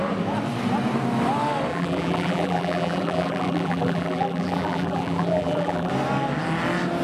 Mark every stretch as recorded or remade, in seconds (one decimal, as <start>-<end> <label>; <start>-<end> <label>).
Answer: 0.0-1.7 recorded; 1.7-5.9 remade; 5.9-7.0 recorded

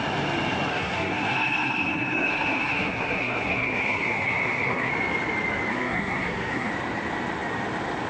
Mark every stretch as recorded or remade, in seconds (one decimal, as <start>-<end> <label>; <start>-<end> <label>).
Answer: 0.0-0.7 recorded; 0.7-4.9 remade; 4.9-5.7 recorded; 5.7-6.7 remade; 6.7-8.1 recorded

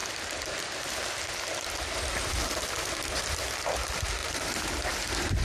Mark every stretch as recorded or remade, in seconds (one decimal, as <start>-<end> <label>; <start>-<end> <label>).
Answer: 0.0-3.2 remade; 3.2-4.2 recorded; 4.2-4.7 remade; 4.7-5.4 recorded

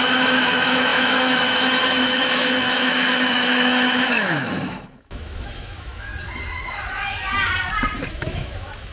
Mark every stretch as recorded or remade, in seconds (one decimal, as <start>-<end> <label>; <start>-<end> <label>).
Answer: 0.0-6.1 remade; 6.1-8.1 recorded; 8.1-8.9 remade

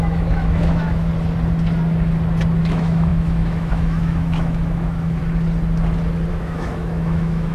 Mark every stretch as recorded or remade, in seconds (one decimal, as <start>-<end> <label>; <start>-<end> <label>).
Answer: 0.0-1.1 remade; 1.1-2.6 recorded; 2.6-5.2 remade; 5.2-6.3 recorded; 6.3-7.5 remade